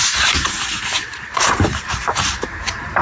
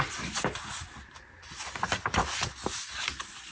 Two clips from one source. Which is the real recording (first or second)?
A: second